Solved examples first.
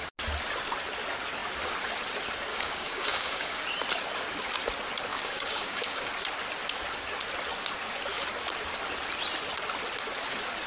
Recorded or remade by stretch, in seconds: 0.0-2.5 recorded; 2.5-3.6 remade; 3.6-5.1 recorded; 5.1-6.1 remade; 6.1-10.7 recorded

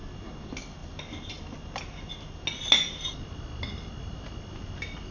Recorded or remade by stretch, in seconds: 0.0-5.1 recorded

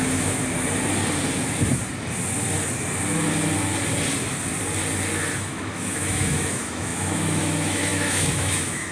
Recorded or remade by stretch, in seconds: 0.0-0.4 remade; 0.4-5.4 recorded; 5.4-8.9 remade

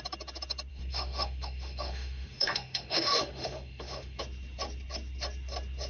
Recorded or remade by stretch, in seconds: 0.0-0.7 recorded; 0.7-4.2 remade; 4.2-5.9 recorded

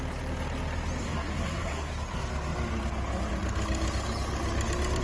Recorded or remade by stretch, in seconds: 0.0-1.0 recorded; 1.0-1.9 remade; 1.9-5.0 recorded

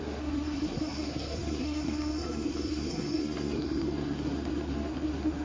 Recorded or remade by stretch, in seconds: 0.0-5.4 remade

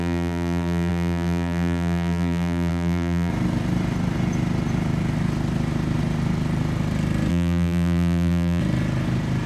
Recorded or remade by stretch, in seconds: 0.0-3.3 remade; 3.3-7.3 recorded; 7.3-8.6 remade; 8.6-9.5 recorded